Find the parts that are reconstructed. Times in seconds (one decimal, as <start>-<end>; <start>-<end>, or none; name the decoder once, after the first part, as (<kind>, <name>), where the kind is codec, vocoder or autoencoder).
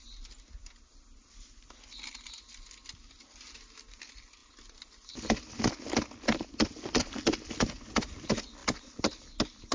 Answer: none